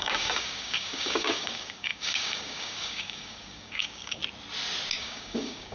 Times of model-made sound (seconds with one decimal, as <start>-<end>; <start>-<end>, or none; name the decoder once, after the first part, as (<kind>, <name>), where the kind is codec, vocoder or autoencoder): 0.0-4.2 (codec, DAC); 5.0-5.7